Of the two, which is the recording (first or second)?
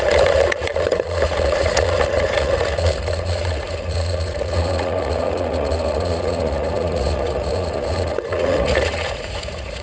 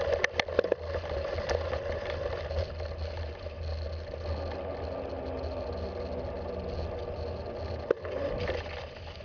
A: second